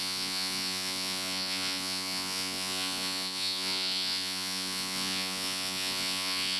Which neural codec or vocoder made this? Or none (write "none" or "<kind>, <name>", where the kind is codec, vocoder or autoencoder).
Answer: vocoder, Vocos